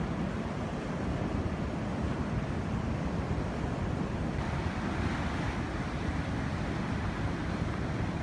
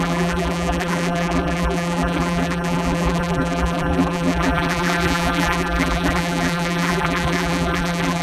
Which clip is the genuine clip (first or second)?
first